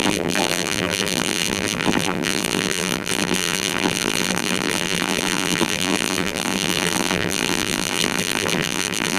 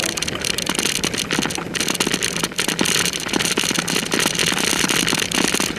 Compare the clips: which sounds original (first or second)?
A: second